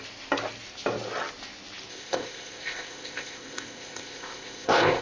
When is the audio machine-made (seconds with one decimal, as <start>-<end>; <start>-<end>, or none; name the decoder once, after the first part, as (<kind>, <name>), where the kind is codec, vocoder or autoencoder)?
1.9-5.0 (codec, ZipCodec)